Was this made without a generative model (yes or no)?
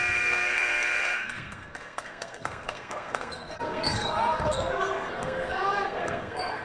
no